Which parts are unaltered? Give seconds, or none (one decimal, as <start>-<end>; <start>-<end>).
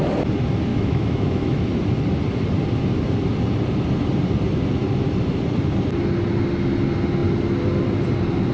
0.0-0.7; 1.6-8.5